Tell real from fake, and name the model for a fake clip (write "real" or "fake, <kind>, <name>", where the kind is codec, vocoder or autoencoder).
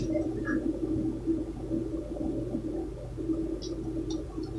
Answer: real